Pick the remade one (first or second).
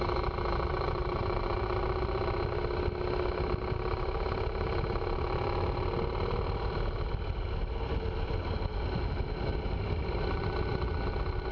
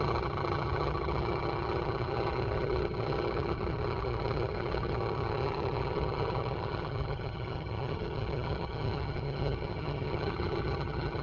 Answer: second